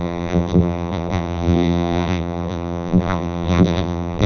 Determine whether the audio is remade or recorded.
remade